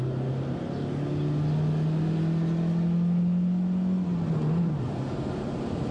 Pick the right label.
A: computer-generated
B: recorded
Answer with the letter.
B